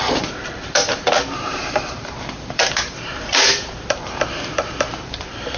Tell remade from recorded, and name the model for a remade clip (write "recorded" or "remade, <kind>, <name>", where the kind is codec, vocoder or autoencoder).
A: remade, vocoder, BigVGAN v2